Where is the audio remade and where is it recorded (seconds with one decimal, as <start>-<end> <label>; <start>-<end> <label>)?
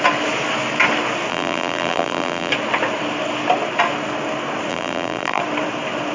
0.0-1.3 recorded; 1.3-2.5 remade; 2.5-4.7 recorded; 4.7-5.4 remade; 5.4-6.1 recorded